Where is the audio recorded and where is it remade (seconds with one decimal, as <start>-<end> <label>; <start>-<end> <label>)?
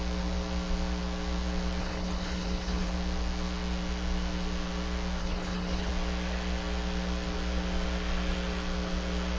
0.0-1.8 recorded; 1.8-2.9 remade; 2.9-5.2 recorded; 5.2-5.9 remade; 5.9-9.4 recorded